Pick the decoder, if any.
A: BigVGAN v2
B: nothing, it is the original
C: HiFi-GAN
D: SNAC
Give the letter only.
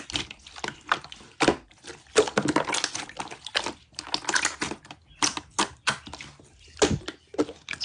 B